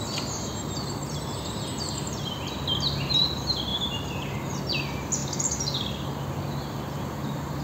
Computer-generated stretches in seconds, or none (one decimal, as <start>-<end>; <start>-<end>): none